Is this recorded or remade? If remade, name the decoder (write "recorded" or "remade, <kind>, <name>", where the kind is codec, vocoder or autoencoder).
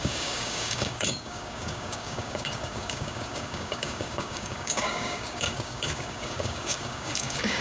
remade, codec, DAC